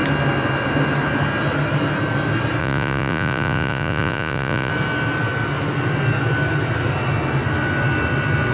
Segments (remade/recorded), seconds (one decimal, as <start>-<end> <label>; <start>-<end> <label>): 0.0-2.6 recorded; 2.6-4.7 remade; 4.7-8.5 recorded